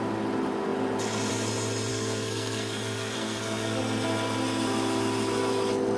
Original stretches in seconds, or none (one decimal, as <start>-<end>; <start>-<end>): 0.0-1.9; 3.8-6.0